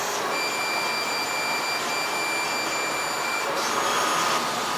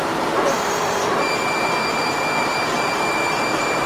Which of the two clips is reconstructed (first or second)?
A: second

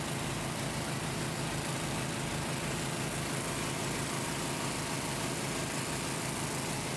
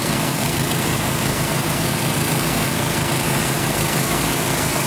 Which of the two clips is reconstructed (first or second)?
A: second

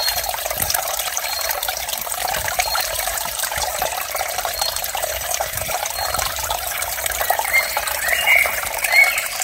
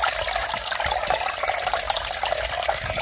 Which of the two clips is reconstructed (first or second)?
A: first